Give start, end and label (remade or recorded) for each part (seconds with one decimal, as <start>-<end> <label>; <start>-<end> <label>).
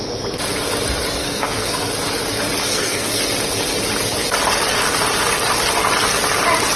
0.0-1.2 recorded; 1.2-1.9 remade; 1.9-2.6 recorded; 2.6-3.2 remade; 3.2-6.8 recorded